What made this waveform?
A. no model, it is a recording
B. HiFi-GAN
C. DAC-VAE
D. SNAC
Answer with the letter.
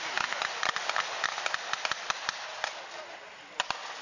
A